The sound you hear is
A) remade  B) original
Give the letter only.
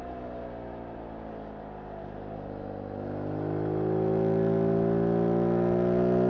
B